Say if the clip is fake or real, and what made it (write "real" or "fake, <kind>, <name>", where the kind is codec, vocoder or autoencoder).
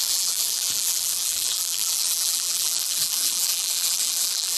fake, vocoder, BigVGAN v2